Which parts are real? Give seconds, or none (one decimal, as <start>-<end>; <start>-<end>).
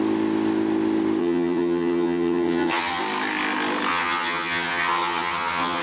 0.0-1.2; 3.0-3.9